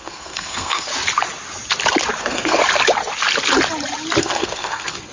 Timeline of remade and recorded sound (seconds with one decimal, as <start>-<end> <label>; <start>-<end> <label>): 0.0-0.9 remade; 0.9-2.2 recorded; 2.2-2.6 remade; 2.6-4.2 recorded; 4.2-5.1 remade